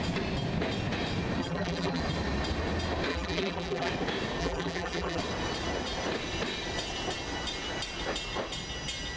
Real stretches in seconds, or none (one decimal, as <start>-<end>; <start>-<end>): 0.0-1.4; 2.0-3.1; 3.9-4.4; 5.2-9.2